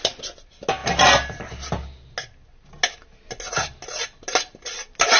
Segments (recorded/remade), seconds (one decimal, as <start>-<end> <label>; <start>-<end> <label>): 0.0-5.2 recorded